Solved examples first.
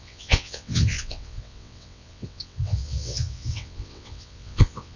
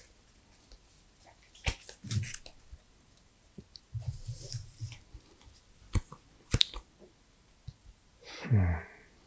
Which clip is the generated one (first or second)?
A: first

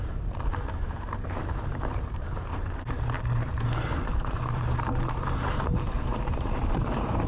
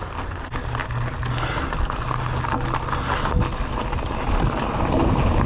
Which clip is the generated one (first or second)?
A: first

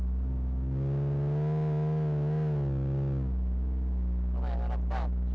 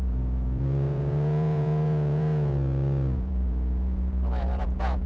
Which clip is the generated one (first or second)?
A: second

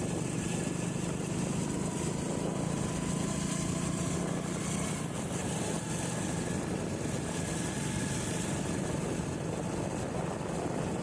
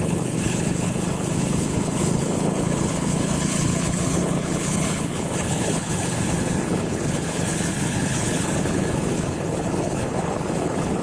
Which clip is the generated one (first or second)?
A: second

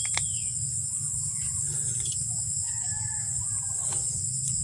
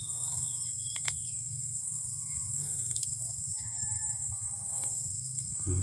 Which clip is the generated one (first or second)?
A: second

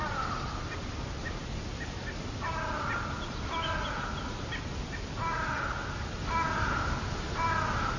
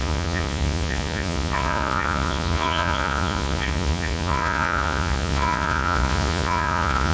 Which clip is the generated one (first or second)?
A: second